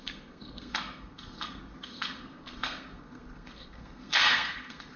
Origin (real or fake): fake